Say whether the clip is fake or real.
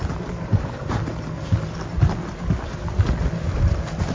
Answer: real